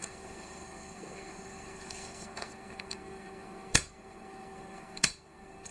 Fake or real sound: fake